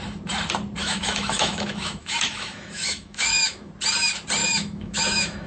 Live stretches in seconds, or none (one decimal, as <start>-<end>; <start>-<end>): 0.0-0.8; 3.7-4.4

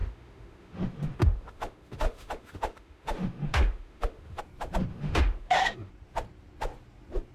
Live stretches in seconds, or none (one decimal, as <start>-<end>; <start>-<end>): 4.4-4.9; 5.9-7.3